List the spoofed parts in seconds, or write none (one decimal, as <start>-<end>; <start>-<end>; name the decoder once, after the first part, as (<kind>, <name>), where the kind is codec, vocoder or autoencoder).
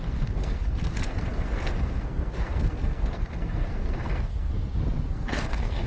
0.0-4.5 (codec, SNAC); 5.1-5.9